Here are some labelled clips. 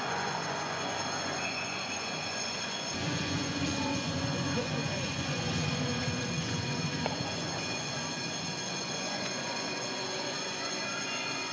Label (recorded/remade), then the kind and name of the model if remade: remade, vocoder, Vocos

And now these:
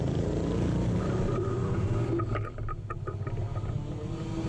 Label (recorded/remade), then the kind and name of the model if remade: recorded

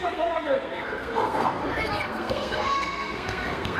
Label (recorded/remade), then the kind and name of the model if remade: remade, codec, SNAC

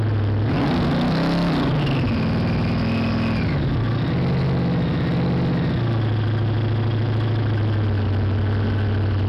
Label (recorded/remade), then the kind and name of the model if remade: recorded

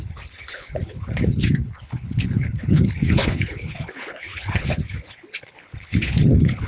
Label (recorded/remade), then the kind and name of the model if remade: remade, codec, HILCodec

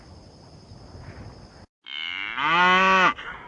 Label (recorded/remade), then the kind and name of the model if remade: recorded